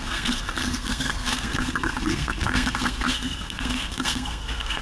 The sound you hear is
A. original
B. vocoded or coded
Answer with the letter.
B